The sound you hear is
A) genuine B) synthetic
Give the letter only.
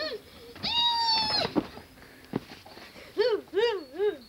A